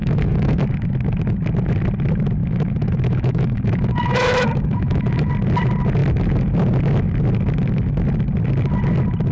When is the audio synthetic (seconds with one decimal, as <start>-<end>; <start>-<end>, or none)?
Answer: 0.0-0.6; 2.4-5.3